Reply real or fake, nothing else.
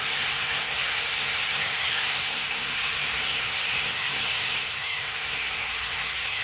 fake